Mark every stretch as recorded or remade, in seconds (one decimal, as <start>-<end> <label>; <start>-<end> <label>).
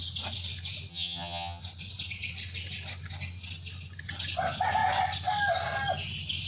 0.0-0.9 recorded; 0.9-1.6 remade; 1.6-6.5 recorded